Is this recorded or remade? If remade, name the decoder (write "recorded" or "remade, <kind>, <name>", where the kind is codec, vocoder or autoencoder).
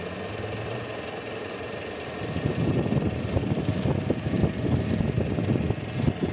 recorded